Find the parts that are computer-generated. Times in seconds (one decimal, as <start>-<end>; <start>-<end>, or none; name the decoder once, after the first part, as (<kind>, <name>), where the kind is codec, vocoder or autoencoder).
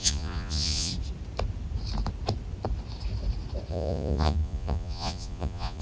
0.0-0.9 (vocoder, Vocos); 3.7-5.8